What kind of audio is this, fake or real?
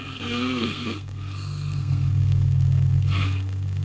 fake